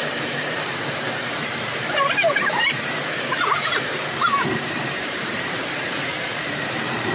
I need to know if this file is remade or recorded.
remade